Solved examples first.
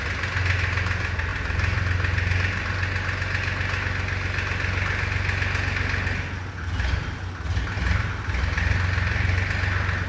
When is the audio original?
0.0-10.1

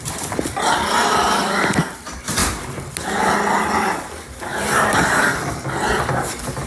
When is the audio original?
0.0-4.5; 5.1-6.7

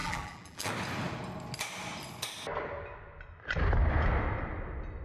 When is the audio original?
0.7-5.0

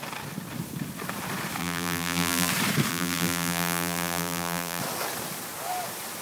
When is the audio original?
0.0-1.6; 2.5-2.9; 4.8-6.2

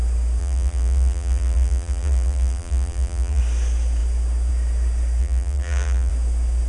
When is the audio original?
0.0-0.4; 3.4-5.2; 6.1-6.7

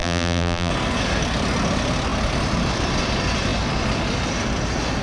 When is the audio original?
0.7-5.0

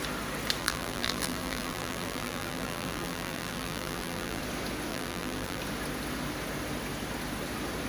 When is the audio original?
0.0-0.6; 4.4-4.9; 5.6-7.9

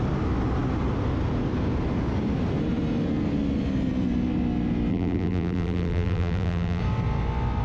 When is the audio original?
0.0-4.9; 6.8-7.6